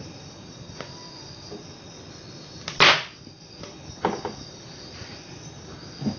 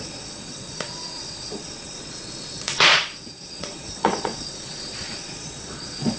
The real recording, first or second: first